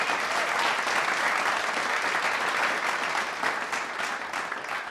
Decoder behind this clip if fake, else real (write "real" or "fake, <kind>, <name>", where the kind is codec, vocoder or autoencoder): real